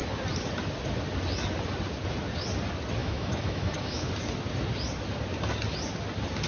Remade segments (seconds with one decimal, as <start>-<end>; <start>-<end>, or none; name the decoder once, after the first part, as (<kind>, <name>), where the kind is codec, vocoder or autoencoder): 3.0-4.1 (autoencoder, DAC-VAE)